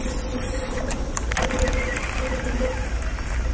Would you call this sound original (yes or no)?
yes